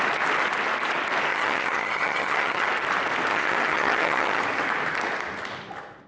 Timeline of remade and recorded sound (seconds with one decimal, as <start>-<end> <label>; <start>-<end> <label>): 0.0-1.3 recorded; 1.3-2.7 remade; 2.7-3.3 recorded; 3.3-4.4 remade; 4.4-6.1 recorded